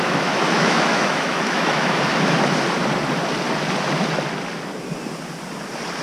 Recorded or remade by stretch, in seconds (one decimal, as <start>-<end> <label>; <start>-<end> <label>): 0.0-2.1 remade; 2.1-6.0 recorded